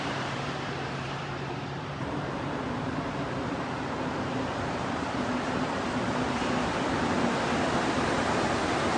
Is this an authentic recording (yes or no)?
no